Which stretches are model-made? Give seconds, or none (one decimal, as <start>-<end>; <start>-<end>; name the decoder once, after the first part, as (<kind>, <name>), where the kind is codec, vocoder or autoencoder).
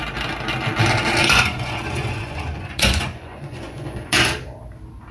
1.2-4.3 (vocoder, Vocos)